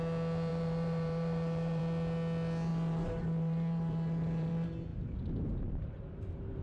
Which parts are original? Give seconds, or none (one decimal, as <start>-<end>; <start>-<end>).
0.0-0.5; 1.8-2.7; 4.5-6.6